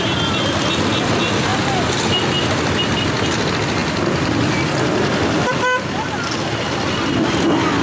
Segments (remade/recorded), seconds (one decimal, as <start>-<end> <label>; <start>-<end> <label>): 0.0-7.8 recorded